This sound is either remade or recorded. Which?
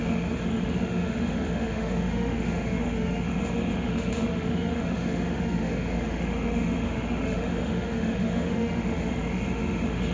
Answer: remade